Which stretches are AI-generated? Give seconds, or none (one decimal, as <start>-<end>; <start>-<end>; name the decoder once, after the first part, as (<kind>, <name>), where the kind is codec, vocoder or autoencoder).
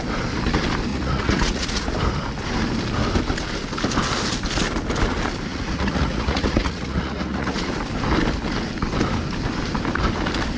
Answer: 0.9-1.9 (vocoder, Vocos); 5.5-7.7